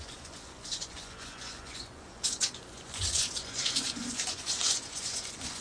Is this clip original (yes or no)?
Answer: no